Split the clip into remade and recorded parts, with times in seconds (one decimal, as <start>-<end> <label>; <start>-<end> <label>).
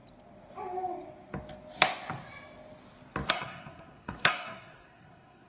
0.0-3.3 recorded; 3.3-5.5 remade